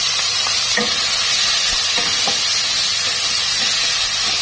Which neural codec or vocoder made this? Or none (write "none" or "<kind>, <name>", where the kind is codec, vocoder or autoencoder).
none